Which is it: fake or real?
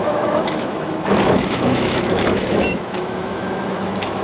fake